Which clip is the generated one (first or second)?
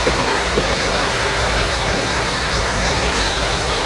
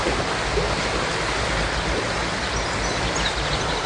first